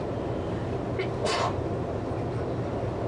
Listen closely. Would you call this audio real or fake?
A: real